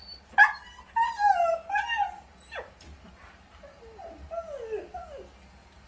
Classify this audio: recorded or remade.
recorded